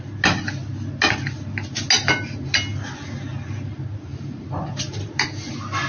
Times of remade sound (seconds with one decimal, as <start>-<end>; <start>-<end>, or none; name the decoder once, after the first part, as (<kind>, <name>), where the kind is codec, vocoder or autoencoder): 4.1-4.6 (vocoder, BigVGAN v2)